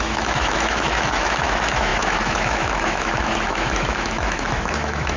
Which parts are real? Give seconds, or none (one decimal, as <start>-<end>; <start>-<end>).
none